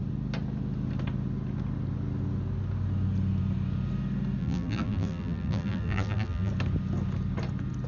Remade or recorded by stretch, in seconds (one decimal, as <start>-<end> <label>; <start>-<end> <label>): 0.0-4.4 recorded; 4.4-6.5 remade; 6.5-7.9 recorded